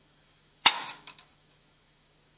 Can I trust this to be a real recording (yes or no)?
no